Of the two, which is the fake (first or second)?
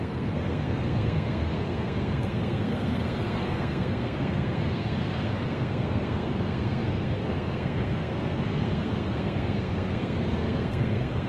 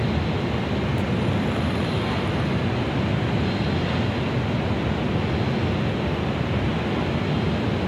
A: first